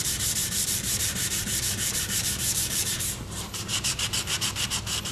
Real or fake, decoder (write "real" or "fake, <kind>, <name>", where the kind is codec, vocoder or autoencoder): fake, vocoder, BigVGAN v2